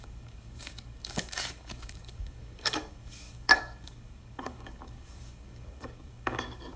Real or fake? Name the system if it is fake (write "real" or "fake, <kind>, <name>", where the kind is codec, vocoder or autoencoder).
fake, codec, DAC